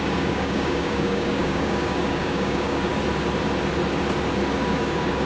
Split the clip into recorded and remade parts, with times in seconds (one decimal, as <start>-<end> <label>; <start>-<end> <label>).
0.0-2.9 remade; 2.9-4.6 recorded; 4.6-5.3 remade